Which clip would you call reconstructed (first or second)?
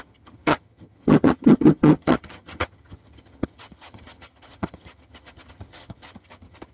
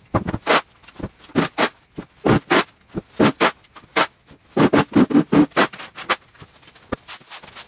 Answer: first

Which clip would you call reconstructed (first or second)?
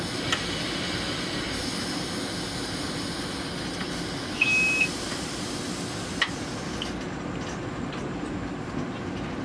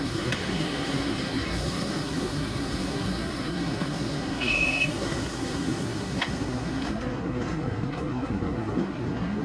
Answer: second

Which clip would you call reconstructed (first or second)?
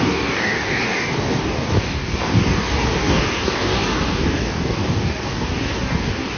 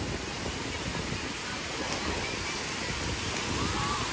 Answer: first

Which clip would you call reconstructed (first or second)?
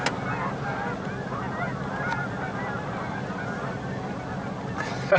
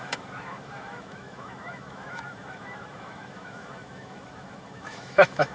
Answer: second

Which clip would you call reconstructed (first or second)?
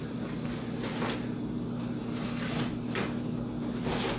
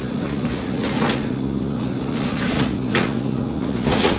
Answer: second